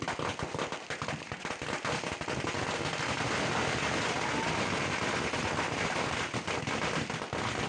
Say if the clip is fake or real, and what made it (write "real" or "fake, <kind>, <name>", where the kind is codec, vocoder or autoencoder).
real